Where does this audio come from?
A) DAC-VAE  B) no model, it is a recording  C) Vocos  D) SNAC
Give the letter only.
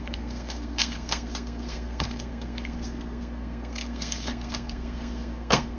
D